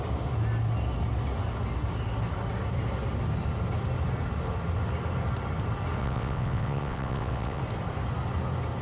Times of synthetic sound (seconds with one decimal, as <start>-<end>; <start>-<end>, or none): 6.0-7.6